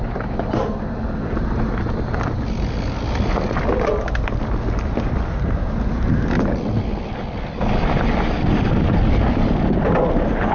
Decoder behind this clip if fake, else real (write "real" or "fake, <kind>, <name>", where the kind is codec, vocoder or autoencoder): real